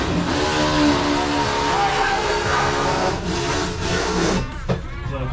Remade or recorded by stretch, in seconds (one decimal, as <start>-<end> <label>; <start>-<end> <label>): 0.0-1.9 recorded; 1.9-3.1 remade; 3.1-3.9 recorded; 3.9-4.5 remade; 4.5-5.3 recorded